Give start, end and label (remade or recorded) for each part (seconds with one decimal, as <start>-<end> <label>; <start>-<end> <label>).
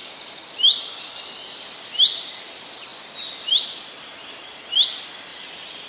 0.0-5.3 recorded; 5.3-5.9 remade